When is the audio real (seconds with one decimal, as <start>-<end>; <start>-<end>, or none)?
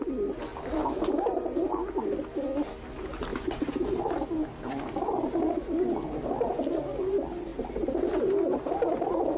0.0-3.3; 4.0-9.4